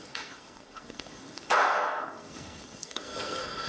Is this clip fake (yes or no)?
yes